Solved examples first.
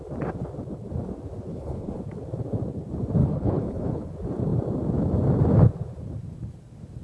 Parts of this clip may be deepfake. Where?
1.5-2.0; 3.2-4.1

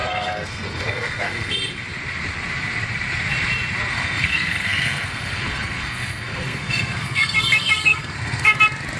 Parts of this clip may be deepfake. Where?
0.0-1.5; 3.9-8.6

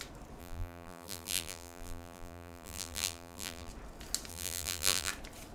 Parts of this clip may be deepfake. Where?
0.4-3.7; 4.3-5.1